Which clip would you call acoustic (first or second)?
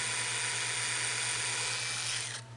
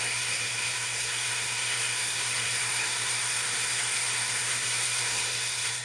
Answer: first